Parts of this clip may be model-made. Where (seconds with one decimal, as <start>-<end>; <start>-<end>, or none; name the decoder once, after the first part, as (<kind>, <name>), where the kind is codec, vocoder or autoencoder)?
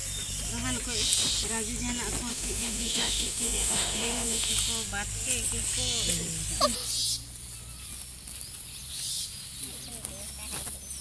2.3-4.5 (autoencoder, DAC-VAE)